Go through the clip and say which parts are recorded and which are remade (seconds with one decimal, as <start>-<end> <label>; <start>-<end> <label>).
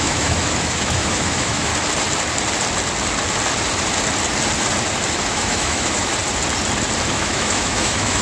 0.0-1.7 remade; 1.7-5.3 recorded; 5.3-6.1 remade; 6.1-7.1 recorded; 7.1-8.2 remade